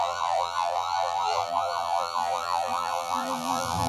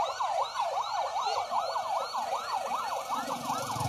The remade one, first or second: first